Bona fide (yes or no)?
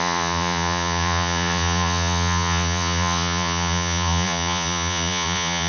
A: no